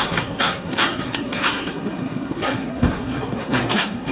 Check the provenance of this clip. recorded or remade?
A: remade